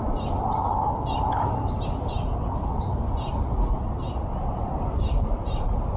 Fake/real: real